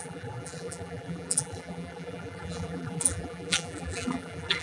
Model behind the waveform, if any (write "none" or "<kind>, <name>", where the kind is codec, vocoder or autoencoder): vocoder, BigVGAN v2